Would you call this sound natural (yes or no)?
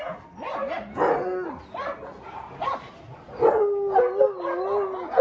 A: yes